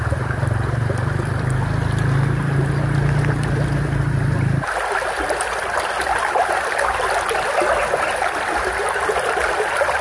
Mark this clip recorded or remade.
recorded